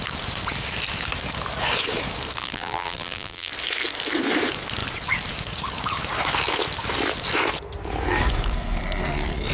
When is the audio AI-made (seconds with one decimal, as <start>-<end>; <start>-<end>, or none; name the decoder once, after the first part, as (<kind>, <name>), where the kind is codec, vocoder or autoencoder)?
2.4-3.5 (vocoder, BigVGAN v2)